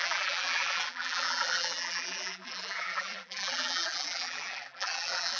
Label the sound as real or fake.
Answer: fake